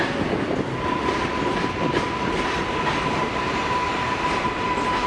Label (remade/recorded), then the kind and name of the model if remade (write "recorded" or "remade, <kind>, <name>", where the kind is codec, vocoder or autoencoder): recorded